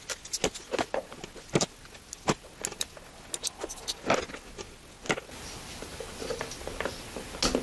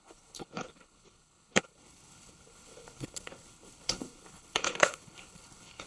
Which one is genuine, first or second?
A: first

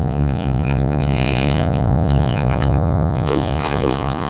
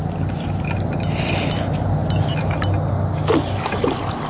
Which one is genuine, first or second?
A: second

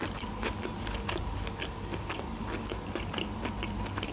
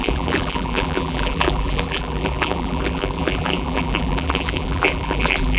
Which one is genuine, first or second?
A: first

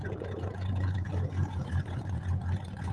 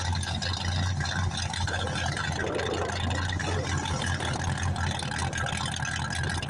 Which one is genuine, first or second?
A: second